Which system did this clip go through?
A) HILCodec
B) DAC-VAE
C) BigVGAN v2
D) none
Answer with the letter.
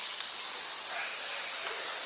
D